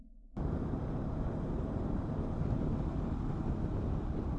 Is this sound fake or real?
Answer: real